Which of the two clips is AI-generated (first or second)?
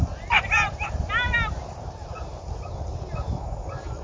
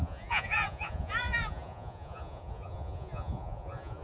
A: second